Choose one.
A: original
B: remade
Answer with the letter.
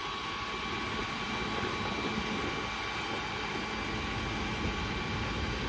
A